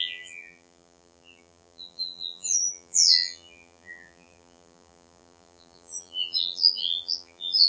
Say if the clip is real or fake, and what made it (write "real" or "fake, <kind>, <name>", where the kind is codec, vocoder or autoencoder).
fake, vocoder, BigVGAN v2